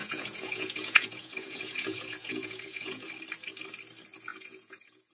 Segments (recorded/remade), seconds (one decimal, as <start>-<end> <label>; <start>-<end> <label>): 0.0-3.1 remade; 3.1-4.3 recorded; 4.3-5.1 remade